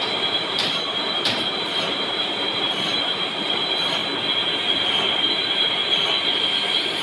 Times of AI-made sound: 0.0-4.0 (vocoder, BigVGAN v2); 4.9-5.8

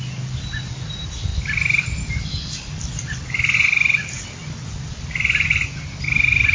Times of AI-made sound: none

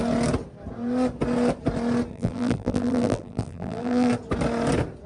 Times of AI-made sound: 2.1-4.1 (vocoder, BigVGAN v2)

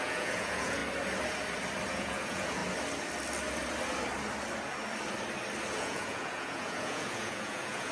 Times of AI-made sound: 0.0-0.8 (vocoder, Vocos); 1.9-2.6; 5.7-7.9

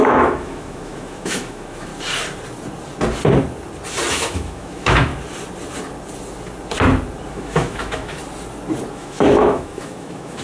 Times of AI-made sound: 0.0-1.9 (autoencoder, DAC-VAE); 4.1-5.1; 7.3-8.2; 8.9-10.4